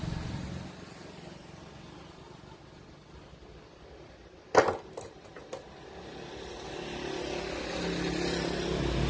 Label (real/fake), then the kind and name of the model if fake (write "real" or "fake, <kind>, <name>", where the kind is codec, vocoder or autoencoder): real